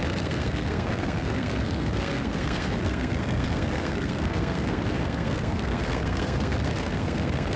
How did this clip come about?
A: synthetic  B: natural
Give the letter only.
A